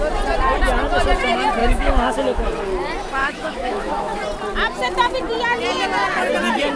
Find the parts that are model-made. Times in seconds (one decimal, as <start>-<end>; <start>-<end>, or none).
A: 1.6-2.5; 3.2-4.2